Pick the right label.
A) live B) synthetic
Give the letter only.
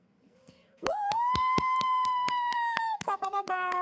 B